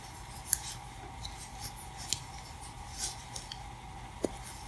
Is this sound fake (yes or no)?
no